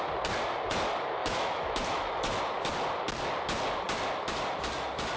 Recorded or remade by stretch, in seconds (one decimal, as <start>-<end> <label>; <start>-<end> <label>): 0.0-1.2 recorded; 1.2-2.4 remade; 2.4-5.2 recorded